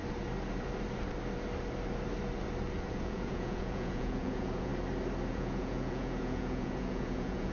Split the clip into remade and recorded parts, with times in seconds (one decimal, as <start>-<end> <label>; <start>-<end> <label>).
0.0-2.9 recorded; 2.9-4.7 remade; 4.7-5.3 recorded; 5.3-7.5 remade